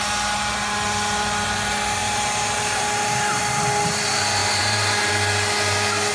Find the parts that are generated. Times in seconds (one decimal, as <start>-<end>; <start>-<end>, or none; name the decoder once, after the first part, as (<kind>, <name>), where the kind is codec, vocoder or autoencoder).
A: 2.0-3.4 (vocoder, BigVGAN v2); 4.4-5.1